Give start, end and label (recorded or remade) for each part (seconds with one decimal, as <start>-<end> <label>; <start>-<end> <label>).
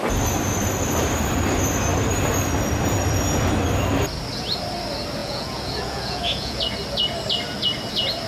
0.0-5.2 recorded; 5.2-6.6 remade; 6.6-8.3 recorded